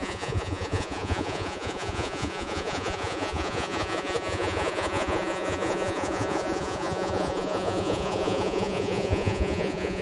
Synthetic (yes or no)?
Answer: yes